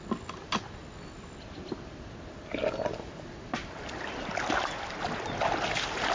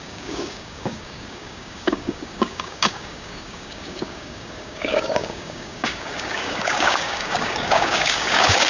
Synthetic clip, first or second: second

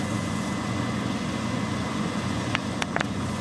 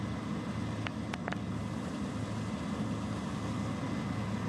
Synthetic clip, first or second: first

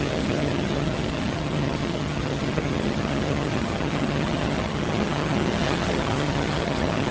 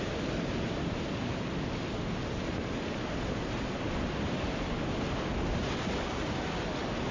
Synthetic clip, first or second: first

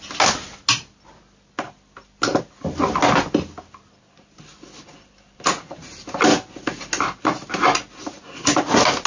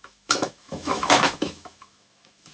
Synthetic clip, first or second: second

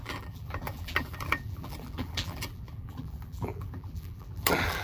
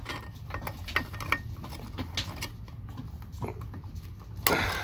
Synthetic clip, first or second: first